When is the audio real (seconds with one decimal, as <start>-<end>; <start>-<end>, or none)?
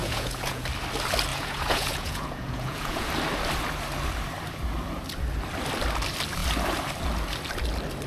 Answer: 0.6-1.3; 3.1-8.1